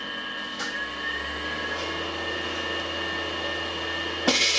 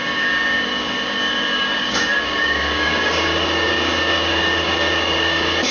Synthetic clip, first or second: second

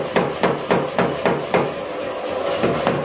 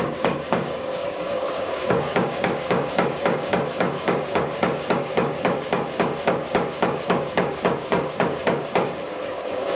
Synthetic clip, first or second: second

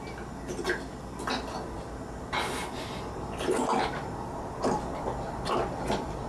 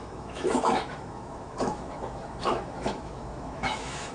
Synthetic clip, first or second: second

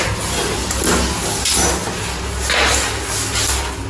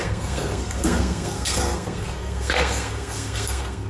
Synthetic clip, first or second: second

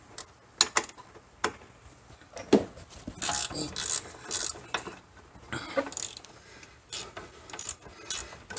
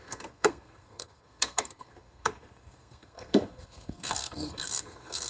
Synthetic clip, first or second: second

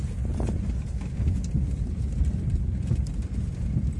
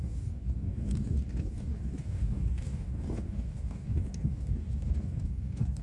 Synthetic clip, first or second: second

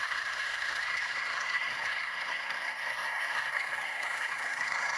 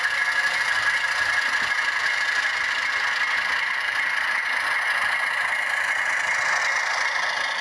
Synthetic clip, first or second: first